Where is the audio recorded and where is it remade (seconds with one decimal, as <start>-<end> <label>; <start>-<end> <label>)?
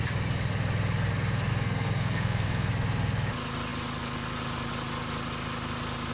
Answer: 0.0-1.5 recorded; 1.5-2.7 remade; 2.7-6.1 recorded